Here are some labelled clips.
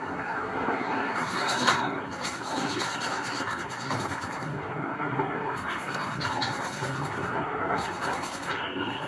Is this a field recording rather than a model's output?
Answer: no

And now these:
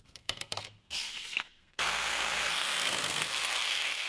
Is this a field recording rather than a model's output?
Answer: no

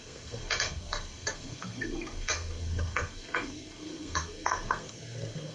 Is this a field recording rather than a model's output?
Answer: no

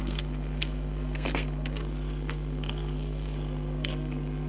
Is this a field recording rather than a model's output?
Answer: no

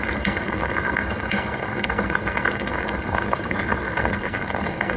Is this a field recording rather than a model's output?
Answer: no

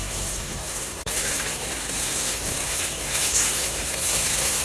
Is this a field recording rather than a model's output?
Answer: no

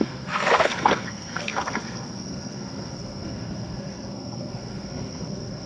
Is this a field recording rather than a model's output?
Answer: no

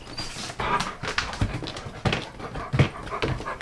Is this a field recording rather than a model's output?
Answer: yes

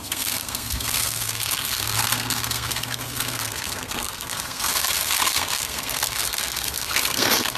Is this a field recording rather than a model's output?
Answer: no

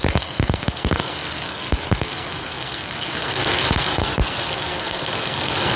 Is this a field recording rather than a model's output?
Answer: no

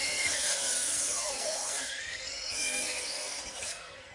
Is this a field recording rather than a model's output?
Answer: no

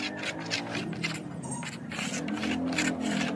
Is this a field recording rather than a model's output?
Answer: yes